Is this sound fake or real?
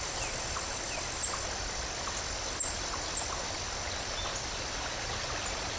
real